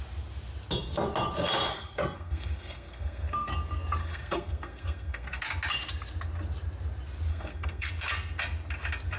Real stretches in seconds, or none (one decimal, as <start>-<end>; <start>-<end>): 0.0-1.7; 3.5-4.0; 5.4-7.3; 7.9-9.2